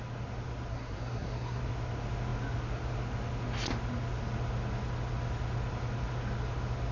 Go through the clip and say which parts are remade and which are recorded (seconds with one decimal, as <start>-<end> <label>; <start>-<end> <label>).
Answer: 0.0-0.7 recorded; 0.7-1.6 remade; 1.6-6.9 recorded